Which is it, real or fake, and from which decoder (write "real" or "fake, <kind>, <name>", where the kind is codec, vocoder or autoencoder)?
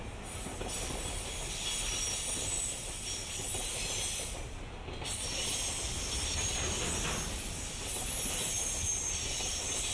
real